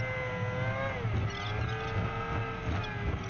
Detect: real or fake real